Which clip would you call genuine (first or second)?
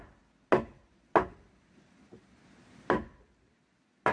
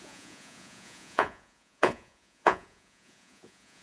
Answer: first